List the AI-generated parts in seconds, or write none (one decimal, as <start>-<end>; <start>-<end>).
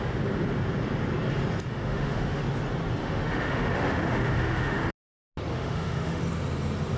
1.7-2.4; 3.0-4.9; 5.5-6.2